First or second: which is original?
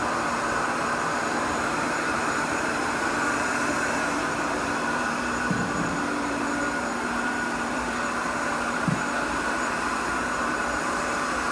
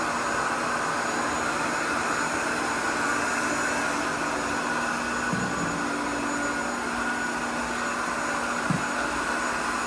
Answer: second